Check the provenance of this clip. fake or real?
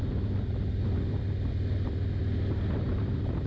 real